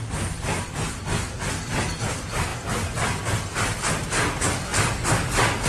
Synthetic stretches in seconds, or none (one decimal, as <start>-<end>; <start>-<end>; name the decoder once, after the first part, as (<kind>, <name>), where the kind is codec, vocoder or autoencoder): none